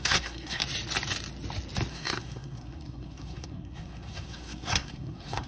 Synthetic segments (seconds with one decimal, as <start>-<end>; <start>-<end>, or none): 0.0-0.6; 1.9-5.5